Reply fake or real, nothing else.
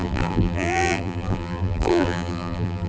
fake